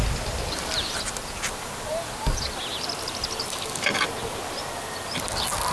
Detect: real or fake real